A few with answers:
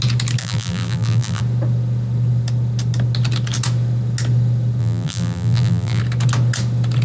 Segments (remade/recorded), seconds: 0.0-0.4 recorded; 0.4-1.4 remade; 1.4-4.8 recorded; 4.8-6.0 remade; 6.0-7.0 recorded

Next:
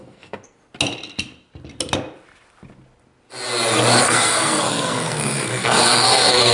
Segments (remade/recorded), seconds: 0.0-0.6 remade; 0.6-4.0 recorded; 4.0-6.5 remade

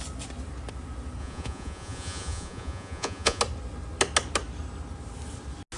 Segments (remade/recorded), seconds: 0.0-1.2 recorded; 1.2-3.4 remade; 3.4-5.8 recorded

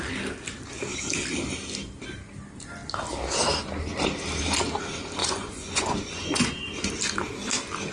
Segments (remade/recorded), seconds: 0.0-5.2 recorded; 5.2-6.5 remade; 6.5-7.9 recorded

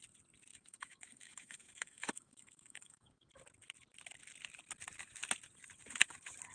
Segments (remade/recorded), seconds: 0.0-0.5 recorded; 0.5-3.3 remade; 3.3-6.5 recorded